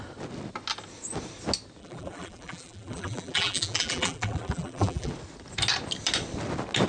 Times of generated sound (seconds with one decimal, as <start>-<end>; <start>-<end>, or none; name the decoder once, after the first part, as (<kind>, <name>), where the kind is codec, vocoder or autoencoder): 1.8-5.1 (vocoder, BigVGAN v2)